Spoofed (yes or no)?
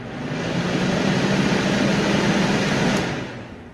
no